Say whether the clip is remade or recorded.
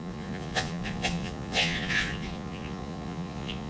remade